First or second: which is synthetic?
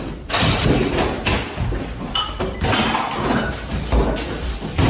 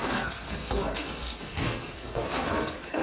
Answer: second